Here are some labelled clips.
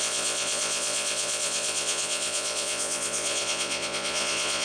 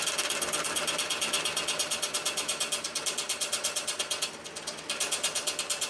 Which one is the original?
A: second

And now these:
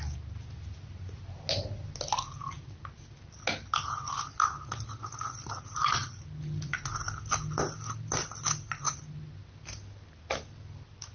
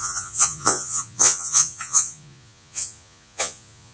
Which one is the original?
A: first